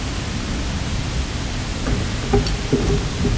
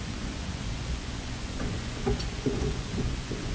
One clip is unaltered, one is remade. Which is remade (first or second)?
second